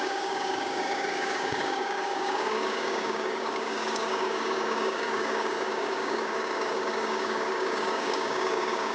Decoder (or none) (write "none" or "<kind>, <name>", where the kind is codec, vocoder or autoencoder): codec, DAC